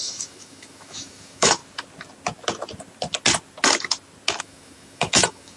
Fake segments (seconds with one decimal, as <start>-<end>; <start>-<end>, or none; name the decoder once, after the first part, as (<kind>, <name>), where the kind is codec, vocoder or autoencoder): 0.0-1.6 (autoencoder, DAC-VAE); 4.4-5.6